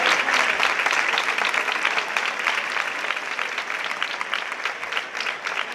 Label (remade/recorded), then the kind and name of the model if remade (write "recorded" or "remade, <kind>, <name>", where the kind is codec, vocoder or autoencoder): recorded